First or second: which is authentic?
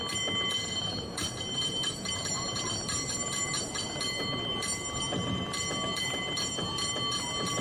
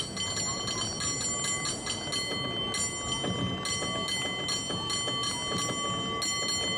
second